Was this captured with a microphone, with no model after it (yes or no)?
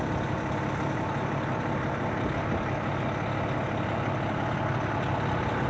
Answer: yes